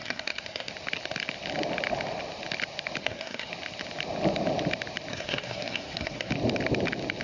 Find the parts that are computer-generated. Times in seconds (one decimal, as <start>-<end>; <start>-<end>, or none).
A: 0.0-0.7; 3.0-3.5; 5.1-6.3